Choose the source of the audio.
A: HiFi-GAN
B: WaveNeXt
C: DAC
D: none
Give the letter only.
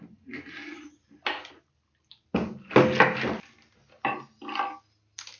D